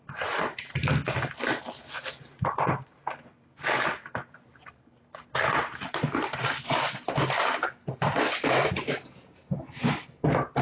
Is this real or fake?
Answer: real